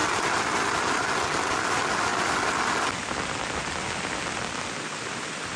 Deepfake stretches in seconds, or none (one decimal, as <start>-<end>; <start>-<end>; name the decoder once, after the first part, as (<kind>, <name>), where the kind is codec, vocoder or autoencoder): none